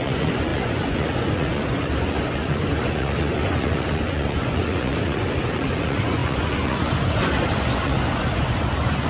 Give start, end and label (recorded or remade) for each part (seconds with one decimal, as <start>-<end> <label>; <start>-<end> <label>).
0.0-9.1 remade